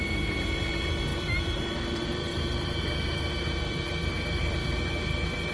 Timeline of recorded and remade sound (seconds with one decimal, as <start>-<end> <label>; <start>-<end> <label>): 0.0-5.5 remade